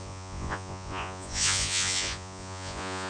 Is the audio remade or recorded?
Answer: remade